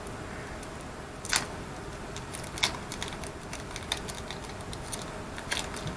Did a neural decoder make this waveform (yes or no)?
no